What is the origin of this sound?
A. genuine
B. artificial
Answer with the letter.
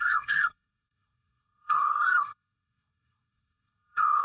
B